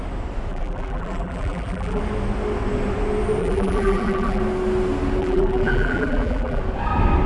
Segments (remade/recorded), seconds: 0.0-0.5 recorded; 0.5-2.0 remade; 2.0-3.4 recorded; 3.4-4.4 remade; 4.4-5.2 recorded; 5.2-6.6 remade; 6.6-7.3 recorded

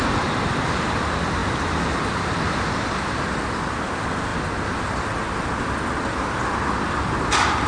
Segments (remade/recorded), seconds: 0.0-7.7 recorded

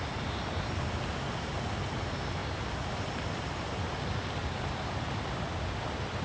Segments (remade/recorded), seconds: 0.0-2.4 recorded; 2.4-3.0 remade; 3.0-4.4 recorded; 4.4-5.2 remade; 5.2-6.2 recorded

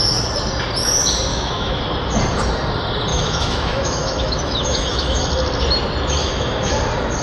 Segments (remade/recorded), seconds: 0.0-1.3 recorded; 1.3-1.8 remade; 1.8-3.1 recorded; 3.1-5.2 remade; 5.2-6.2 recorded; 6.2-6.7 remade; 6.7-7.2 recorded

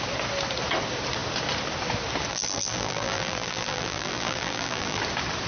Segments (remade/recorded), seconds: 0.0-2.3 recorded; 2.3-5.0 remade; 5.0-5.5 recorded